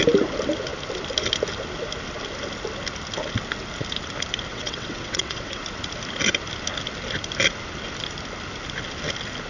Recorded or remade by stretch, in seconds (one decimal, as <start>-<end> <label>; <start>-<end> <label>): 0.0-4.5 recorded; 4.5-5.6 remade; 5.6-9.5 recorded